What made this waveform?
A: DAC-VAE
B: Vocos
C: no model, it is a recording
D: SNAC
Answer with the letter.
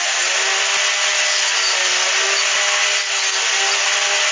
C